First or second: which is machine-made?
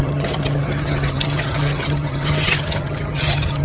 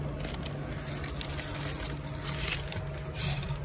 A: first